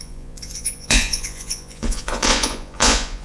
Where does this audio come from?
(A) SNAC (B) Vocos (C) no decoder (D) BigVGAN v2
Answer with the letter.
B